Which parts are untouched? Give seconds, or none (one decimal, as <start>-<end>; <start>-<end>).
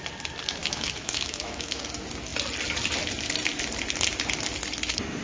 0.0-0.6; 1.8-5.2